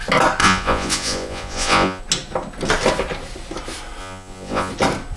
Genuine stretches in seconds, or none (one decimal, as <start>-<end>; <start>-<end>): 0.0-0.4; 2.0-4.0; 4.7-5.2